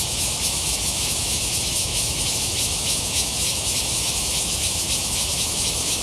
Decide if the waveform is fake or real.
fake